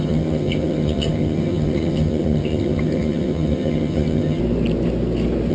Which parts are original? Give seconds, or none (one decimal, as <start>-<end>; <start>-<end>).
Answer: 4.4-5.5